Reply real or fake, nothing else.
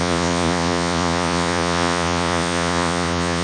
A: fake